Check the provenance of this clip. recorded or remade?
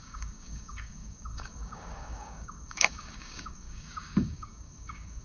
remade